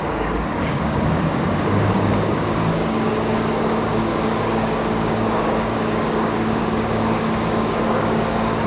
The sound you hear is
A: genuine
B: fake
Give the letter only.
B